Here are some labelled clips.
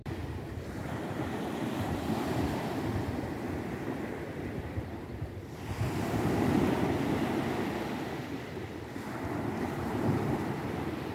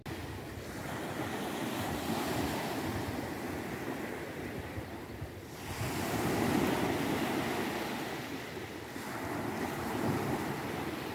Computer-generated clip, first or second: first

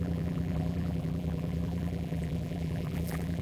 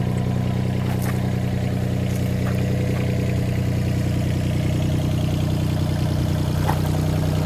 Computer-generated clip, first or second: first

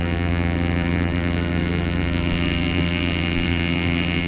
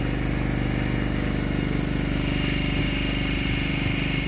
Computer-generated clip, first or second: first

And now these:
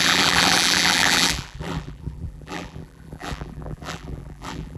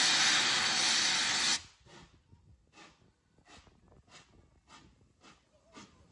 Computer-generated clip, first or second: first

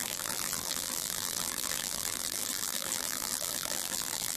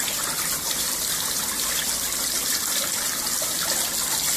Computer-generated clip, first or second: first